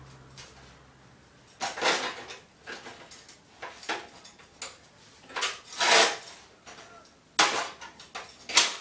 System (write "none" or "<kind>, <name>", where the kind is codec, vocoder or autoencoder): none